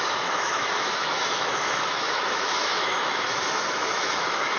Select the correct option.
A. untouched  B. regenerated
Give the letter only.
B